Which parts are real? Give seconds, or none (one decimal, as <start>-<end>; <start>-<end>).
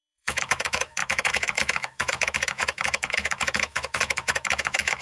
none